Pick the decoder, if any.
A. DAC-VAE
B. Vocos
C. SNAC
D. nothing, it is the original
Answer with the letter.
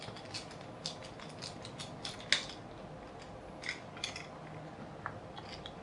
D